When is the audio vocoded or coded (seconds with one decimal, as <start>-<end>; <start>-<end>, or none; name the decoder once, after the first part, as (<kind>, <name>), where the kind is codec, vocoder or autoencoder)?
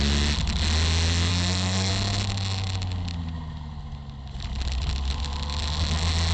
1.3-1.9 (codec, SNAC)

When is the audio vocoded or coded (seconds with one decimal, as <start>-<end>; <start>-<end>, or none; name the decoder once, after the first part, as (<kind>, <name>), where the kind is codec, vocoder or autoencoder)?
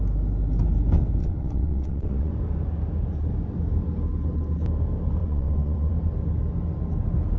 1.2-2.3 (vocoder, WaveNeXt); 5.2-5.9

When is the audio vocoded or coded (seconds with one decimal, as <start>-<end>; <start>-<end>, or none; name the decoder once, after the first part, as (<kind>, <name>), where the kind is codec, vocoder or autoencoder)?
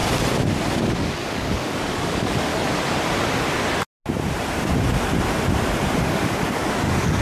0.8-2.5 (codec, DAC); 6.0-7.2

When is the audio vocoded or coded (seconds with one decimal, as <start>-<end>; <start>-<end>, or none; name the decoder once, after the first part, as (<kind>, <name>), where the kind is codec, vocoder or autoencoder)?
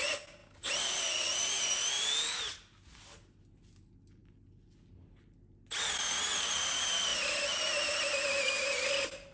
none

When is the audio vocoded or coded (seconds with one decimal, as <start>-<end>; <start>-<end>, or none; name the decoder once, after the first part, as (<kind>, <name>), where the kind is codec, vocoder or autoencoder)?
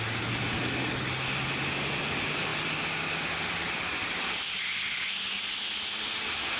none